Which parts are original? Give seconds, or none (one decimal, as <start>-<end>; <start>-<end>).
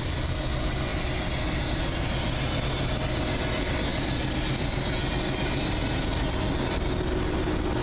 0.0-7.8